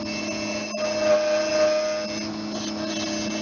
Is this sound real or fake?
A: real